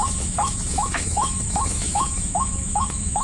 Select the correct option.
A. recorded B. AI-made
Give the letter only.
B